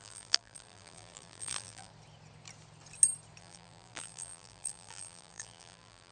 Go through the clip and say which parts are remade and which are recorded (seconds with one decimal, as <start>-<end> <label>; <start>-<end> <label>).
0.0-1.9 remade; 1.9-3.4 recorded; 3.4-6.1 remade